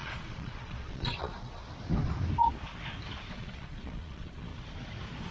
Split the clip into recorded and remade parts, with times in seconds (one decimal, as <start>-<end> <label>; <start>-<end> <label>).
0.0-1.6 remade; 1.6-3.3 recorded; 3.3-4.5 remade; 4.5-5.3 recorded